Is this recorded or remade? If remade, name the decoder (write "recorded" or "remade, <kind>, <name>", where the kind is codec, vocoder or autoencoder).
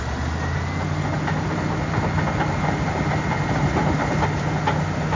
recorded